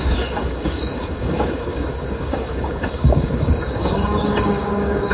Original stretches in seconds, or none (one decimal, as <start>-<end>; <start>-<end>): none